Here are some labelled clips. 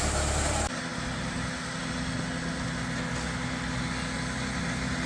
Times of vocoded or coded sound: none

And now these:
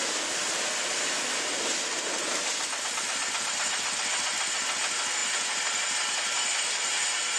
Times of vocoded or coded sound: none

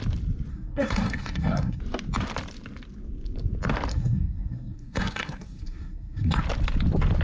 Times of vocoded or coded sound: 0.5-1.8 (codec, SNAC); 3.9-6.4

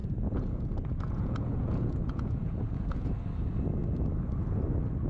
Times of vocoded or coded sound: 0.0-3.1 (vocoder, Vocos)

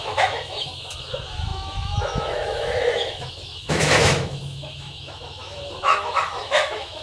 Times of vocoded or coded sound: 0.0-7.0 (autoencoder, DAC-VAE)

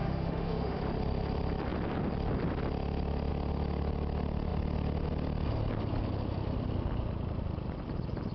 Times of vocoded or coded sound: 0.0-0.8 (autoencoder, DAC-VAE)

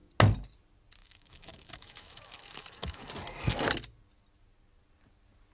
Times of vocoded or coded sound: 1.0-3.1 (autoencoder, DAC-VAE)

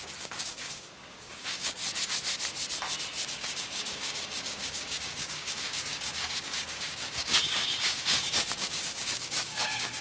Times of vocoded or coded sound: 0.0-1.8 (codec, DAC); 3.3-10.0